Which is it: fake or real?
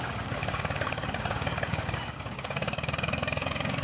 fake